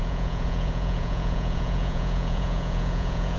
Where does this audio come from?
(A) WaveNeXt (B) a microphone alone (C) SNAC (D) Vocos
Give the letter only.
D